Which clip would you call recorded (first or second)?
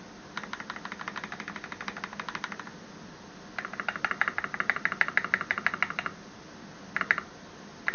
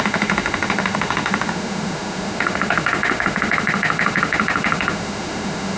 first